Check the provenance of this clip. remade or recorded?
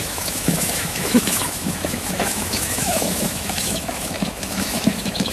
remade